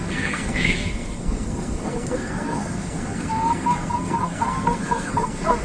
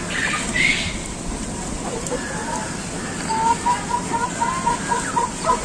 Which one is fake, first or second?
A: first